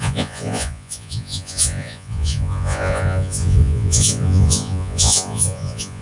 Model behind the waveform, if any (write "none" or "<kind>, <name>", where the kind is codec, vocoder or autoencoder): vocoder, Vocos